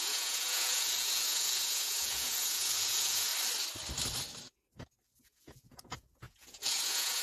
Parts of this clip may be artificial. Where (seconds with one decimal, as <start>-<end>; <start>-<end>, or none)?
0.0-3.3; 5.2-7.2